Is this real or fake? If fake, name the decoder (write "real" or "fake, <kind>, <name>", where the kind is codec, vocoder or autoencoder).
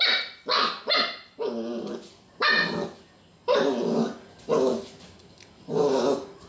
real